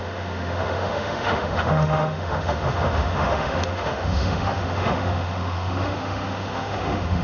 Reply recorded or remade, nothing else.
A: remade